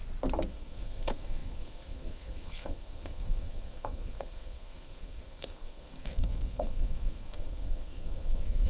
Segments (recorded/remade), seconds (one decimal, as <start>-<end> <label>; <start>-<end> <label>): 0.0-0.5 recorded; 0.5-8.7 remade